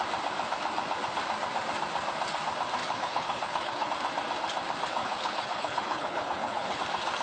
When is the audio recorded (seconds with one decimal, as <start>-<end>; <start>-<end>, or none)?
0.0-2.8; 3.9-5.0; 6.8-7.2